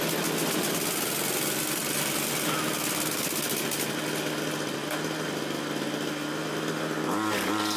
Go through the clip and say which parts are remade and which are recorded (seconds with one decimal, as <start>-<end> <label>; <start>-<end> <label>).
0.0-7.8 recorded